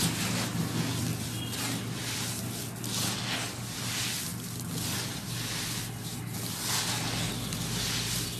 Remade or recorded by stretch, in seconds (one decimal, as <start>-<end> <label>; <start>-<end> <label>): 0.0-8.4 recorded